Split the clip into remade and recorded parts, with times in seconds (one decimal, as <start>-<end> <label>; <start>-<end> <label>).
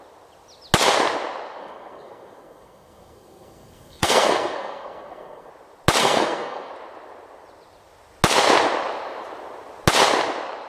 0.0-1.6 recorded; 1.6-5.5 remade; 5.5-6.0 recorded; 6.0-6.7 remade; 6.7-10.7 recorded